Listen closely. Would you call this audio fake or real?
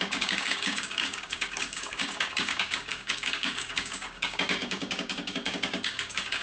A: fake